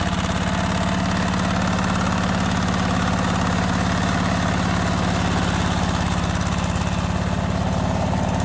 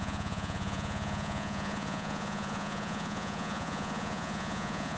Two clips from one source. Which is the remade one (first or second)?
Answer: second